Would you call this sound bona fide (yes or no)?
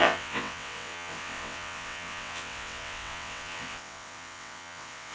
no